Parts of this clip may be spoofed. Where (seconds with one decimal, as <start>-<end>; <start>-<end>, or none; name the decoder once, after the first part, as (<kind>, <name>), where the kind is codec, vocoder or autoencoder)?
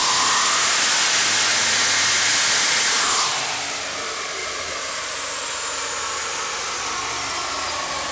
4.4-5.9 (vocoder, BigVGAN v2)